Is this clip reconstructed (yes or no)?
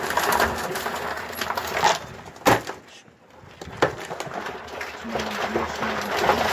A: no